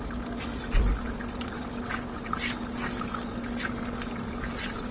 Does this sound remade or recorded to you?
recorded